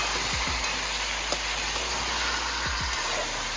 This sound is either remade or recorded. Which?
recorded